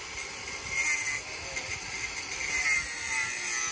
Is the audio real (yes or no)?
yes